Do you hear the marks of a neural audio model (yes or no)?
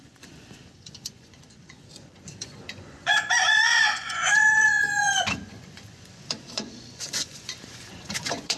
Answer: yes